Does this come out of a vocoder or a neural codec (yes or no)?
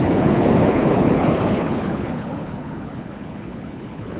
yes